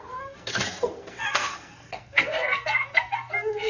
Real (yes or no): no